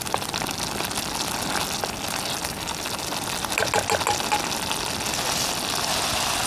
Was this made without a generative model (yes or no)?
yes